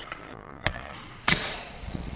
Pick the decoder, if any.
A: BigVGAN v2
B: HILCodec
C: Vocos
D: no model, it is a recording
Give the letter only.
C